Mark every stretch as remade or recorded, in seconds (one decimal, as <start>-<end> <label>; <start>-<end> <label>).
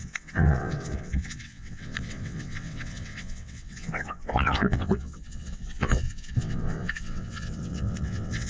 0.0-8.5 remade